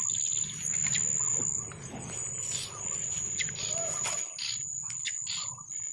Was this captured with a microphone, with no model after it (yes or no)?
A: yes